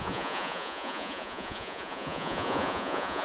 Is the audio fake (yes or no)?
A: yes